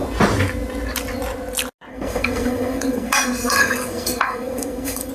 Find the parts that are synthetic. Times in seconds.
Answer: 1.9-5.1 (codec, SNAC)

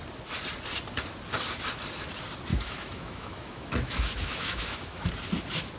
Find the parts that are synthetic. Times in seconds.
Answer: 2.5-5.1 (autoencoder, DAC-VAE)

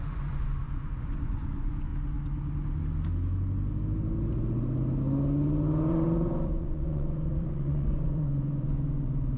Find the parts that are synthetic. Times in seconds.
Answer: 0.0-1.9 (vocoder, Vocos); 5.9-9.4

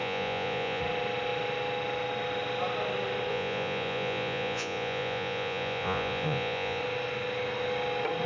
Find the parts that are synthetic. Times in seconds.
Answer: 0.0-0.8 (vocoder, Vocos); 3.3-6.8

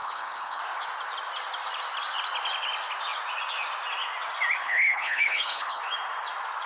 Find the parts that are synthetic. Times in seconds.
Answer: 0.0-0.6 (codec, HILCodec); 4.6-5.8

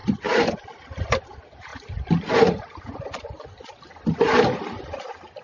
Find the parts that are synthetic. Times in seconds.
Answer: 0.0-0.8 (vocoder, BigVGAN v2)

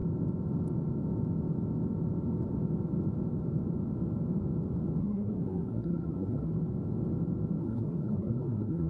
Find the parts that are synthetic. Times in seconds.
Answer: 5.0-6.5 (codec, SNAC); 7.6-8.9